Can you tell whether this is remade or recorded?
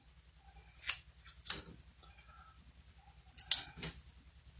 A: recorded